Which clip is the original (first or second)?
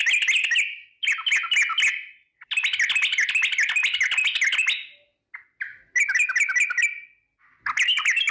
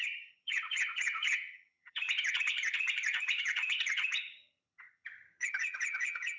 first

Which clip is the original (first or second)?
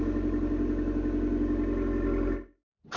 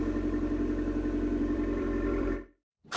first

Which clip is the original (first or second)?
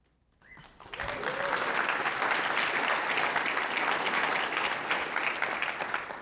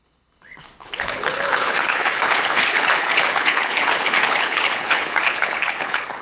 first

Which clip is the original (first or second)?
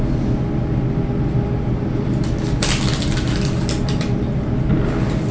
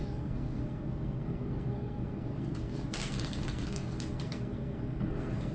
first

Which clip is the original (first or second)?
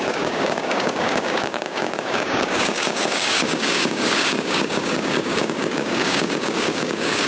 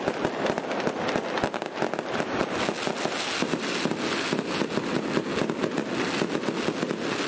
second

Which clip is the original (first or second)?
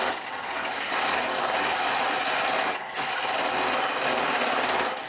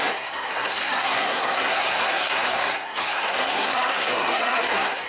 first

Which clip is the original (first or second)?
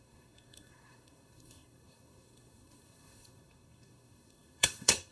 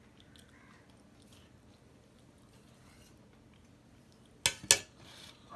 second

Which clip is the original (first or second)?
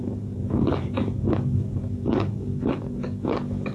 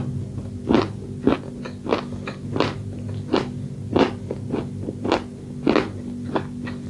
second